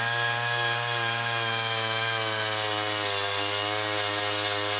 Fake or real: real